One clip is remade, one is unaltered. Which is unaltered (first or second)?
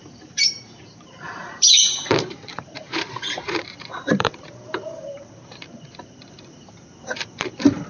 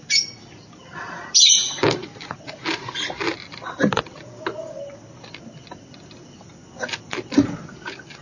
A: second